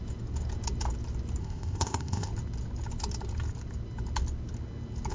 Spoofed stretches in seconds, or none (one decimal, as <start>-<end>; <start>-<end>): 1.4-2.3